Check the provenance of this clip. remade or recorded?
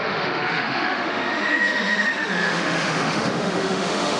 remade